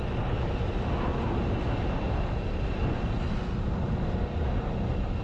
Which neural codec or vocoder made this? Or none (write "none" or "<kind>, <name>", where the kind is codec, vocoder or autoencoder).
none